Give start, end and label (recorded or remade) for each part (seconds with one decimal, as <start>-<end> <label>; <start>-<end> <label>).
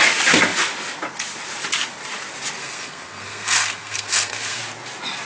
0.0-2.6 recorded; 2.6-4.6 remade; 4.6-5.3 recorded